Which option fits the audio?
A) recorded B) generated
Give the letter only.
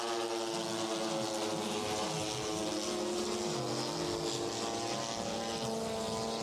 A